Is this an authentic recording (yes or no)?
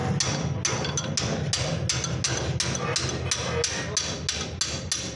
yes